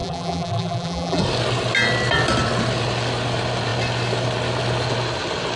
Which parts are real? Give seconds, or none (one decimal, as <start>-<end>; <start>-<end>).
1.2-5.6